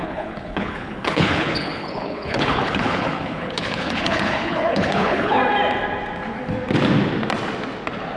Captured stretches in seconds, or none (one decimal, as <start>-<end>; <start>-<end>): 5.4-8.2